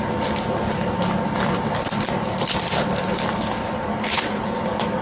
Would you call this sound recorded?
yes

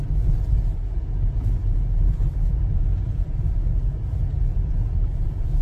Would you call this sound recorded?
no